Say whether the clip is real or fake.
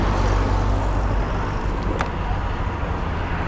real